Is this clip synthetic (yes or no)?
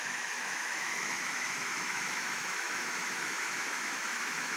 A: yes